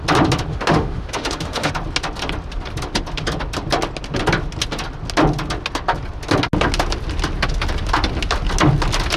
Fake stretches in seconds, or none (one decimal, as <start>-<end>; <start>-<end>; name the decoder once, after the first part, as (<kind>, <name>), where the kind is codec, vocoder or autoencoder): 0.5-1.7 (autoencoder, DAC-VAE)